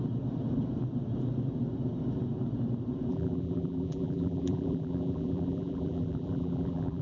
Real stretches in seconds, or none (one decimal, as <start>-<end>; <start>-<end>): 0.0-3.1